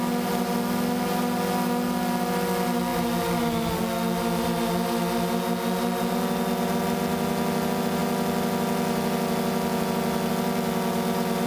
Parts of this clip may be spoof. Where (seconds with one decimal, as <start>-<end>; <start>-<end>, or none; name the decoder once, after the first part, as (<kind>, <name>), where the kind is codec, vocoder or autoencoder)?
none